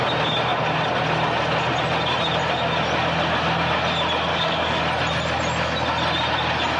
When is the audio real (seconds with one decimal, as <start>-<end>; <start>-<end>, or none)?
0.0-4.3; 4.8-6.8